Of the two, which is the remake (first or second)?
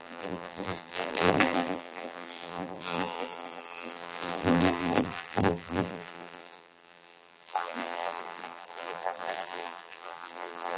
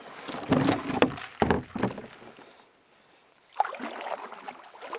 first